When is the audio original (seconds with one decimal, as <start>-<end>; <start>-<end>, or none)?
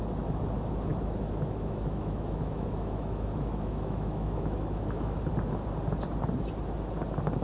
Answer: 0.0-0.9; 5.2-7.4